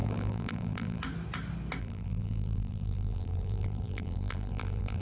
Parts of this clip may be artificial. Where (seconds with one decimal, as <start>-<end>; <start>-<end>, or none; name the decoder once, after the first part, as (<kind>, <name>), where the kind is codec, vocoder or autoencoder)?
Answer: 0.0-1.0 (vocoder, BigVGAN v2); 1.8-5.0